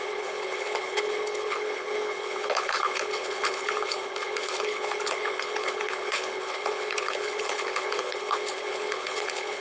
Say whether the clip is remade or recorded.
remade